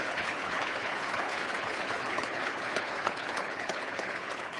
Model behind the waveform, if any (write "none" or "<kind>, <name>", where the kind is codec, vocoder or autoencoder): codec, HILCodec